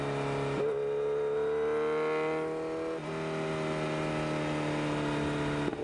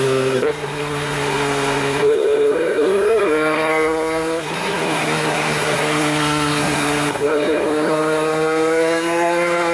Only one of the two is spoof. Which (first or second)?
second